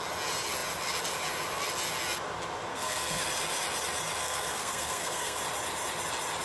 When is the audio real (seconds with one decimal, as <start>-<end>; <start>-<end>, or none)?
0.0-2.7; 3.2-4.2; 5.4-6.4